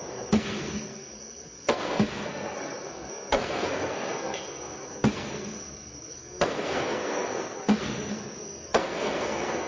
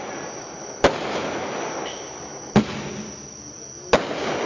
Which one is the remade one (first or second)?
first